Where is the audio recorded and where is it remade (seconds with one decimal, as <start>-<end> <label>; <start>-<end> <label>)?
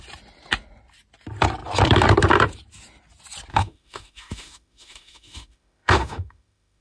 0.0-3.5 recorded; 3.5-6.8 remade